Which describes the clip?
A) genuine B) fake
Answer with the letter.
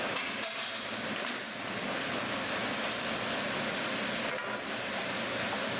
A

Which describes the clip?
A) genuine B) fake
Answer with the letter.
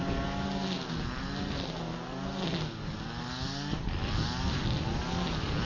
A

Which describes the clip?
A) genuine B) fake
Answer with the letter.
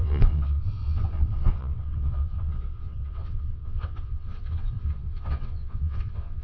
B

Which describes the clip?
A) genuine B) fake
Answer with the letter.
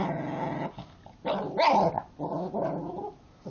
A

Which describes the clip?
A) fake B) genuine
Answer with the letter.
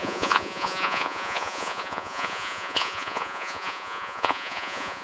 A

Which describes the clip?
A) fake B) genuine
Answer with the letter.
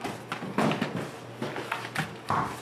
B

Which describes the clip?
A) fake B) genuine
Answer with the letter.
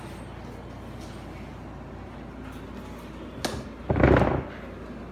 B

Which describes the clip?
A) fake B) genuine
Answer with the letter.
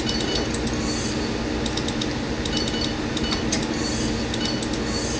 B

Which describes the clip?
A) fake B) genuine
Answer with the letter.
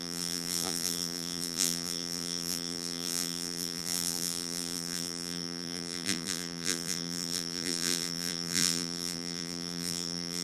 A